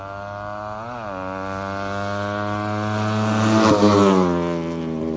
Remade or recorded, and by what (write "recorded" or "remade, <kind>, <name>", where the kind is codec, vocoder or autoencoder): recorded